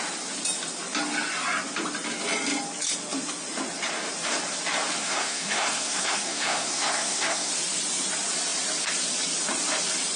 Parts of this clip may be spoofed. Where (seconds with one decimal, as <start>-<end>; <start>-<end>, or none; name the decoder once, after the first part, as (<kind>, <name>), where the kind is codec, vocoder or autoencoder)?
5.0-7.5 (codec, SNAC)